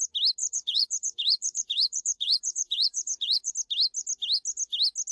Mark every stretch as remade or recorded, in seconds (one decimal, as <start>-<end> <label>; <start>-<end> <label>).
0.0-0.4 recorded; 0.4-3.5 remade; 3.5-5.1 recorded